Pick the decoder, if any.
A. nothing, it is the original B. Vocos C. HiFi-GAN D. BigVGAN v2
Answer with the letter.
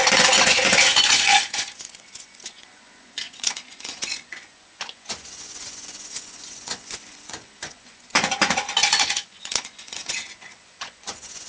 B